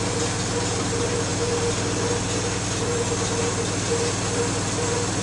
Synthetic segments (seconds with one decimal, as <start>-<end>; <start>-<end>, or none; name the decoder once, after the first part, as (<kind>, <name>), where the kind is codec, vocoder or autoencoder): none